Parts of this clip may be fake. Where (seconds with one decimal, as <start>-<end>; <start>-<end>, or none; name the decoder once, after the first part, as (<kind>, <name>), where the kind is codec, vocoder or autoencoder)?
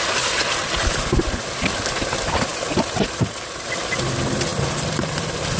0.6-1.3 (vocoder, BigVGAN v2); 4.5-5.6